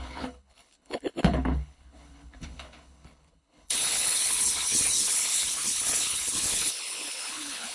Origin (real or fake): fake